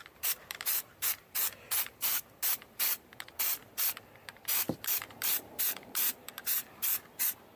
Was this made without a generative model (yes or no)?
no